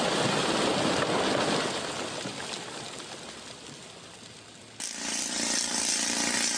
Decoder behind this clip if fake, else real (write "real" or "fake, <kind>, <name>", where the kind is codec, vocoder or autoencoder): real